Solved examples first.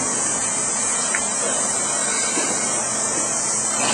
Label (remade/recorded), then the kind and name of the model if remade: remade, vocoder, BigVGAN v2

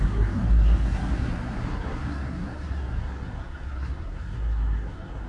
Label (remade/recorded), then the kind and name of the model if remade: remade, codec, SNAC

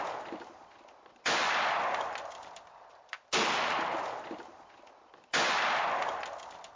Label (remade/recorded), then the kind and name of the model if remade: recorded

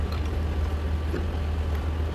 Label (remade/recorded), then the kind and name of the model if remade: recorded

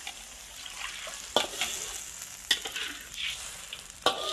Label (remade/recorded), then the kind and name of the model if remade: recorded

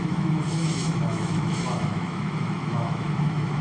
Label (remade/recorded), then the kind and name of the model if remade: remade, autoencoder, DAC-VAE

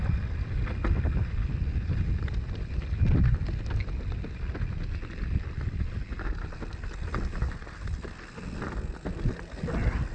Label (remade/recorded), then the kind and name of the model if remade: recorded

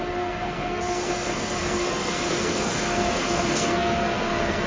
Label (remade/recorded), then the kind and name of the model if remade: remade, codec, SNAC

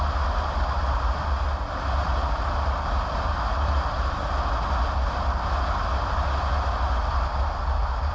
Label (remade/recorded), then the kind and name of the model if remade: recorded